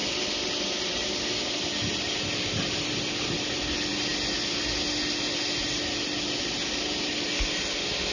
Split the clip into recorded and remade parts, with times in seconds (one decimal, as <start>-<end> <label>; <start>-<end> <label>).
0.0-8.1 recorded